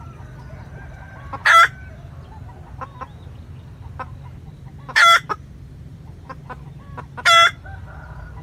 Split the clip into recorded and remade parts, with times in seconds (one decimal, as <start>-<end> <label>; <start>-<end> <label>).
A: 0.0-8.4 recorded